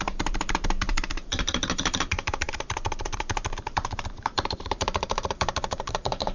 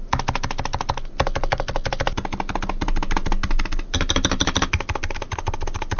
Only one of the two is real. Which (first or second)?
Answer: second